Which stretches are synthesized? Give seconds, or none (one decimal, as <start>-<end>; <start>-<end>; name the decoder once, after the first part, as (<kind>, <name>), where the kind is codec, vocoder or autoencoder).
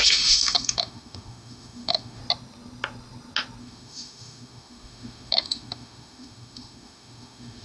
0.0-2.2 (autoencoder, DAC-VAE); 3.6-7.6